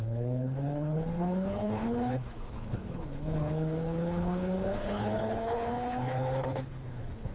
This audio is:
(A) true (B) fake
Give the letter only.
B